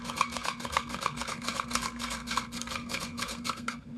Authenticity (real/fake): fake